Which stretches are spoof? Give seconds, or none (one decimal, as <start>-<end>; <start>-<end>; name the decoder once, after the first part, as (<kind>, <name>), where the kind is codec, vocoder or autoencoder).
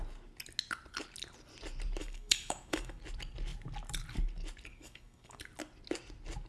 2.0-3.0 (codec, DAC); 4.7-5.4